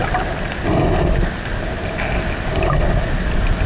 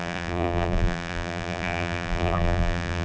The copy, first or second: second